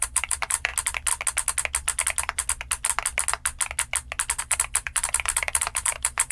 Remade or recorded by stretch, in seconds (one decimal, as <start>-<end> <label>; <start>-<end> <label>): 0.0-0.7 remade; 0.7-4.4 recorded; 4.4-6.3 remade